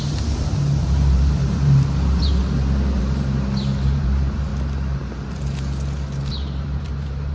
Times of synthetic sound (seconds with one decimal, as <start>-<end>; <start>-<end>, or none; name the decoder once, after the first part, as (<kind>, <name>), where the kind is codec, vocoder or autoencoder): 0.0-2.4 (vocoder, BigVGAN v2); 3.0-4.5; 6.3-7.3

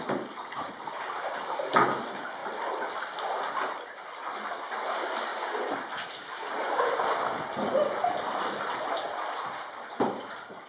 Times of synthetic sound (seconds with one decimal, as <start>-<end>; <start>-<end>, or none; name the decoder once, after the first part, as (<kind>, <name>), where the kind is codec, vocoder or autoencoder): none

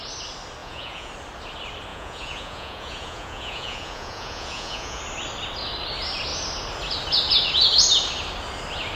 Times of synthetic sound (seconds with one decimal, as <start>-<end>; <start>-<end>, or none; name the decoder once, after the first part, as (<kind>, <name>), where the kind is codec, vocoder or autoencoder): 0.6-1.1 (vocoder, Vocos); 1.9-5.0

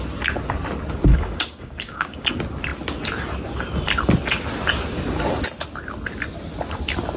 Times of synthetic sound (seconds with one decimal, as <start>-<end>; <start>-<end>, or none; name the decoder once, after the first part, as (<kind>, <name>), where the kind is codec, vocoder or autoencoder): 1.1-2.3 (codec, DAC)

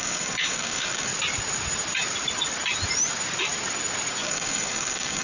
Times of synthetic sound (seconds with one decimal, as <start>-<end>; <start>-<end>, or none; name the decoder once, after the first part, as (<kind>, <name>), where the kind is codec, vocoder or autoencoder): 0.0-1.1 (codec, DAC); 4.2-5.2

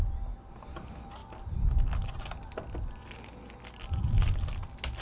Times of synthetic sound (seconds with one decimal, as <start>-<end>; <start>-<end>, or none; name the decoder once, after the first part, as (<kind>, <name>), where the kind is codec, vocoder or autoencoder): none

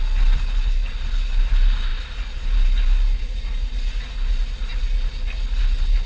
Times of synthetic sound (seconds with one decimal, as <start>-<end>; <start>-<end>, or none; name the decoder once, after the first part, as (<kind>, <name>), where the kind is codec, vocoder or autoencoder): none